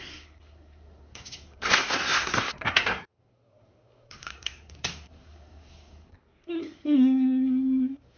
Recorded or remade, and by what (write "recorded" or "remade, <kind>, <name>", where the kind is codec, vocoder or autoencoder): remade, codec, SNAC